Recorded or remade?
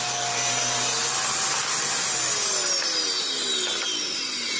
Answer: recorded